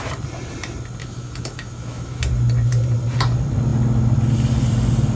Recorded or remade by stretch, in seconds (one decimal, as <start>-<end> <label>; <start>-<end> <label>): 0.0-1.0 recorded; 1.0-2.2 remade; 2.2-5.2 recorded